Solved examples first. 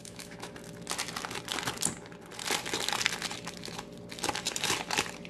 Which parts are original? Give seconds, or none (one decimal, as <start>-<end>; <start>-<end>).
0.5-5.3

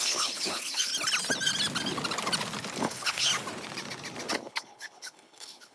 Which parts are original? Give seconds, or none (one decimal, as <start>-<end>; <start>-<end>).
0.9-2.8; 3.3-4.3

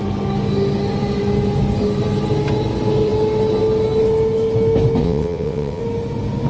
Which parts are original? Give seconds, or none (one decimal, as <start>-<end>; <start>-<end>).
0.0-5.0; 5.8-6.5

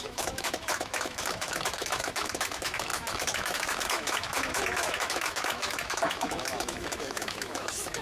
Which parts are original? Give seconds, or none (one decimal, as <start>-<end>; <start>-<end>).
none

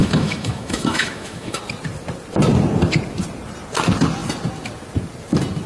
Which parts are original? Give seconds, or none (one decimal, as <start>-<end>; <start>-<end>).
1.6-5.7